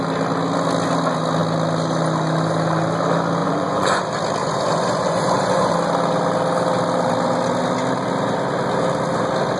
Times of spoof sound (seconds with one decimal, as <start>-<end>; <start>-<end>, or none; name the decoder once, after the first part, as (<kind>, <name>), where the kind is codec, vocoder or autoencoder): 3.4-4.0 (vocoder, Vocos); 4.4-5.7